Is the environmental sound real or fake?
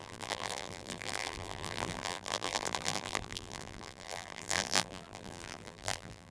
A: fake